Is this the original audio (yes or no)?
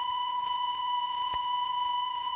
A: no